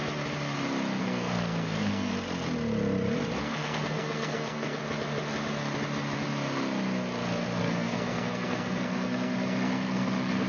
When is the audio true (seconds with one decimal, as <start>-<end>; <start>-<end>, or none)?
0.0-1.0; 2.1-3.4; 4.8-7.6